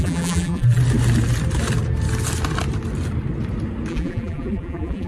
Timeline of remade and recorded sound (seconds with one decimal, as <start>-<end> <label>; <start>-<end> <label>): 0.0-0.8 remade; 0.8-3.9 recorded; 3.9-5.1 remade